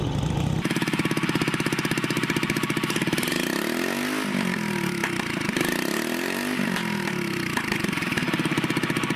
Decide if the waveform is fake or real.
real